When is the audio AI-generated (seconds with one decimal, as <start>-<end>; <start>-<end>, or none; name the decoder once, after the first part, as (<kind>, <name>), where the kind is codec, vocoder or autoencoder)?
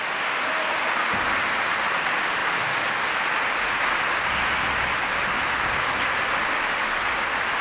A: none